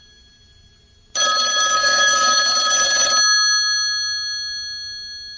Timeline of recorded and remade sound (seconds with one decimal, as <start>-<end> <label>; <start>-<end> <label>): 0.0-1.8 recorded; 1.8-2.4 remade; 2.4-5.4 recorded